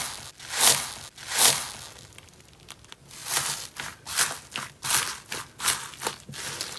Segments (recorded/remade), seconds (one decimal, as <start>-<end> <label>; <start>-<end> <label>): 0.0-6.8 recorded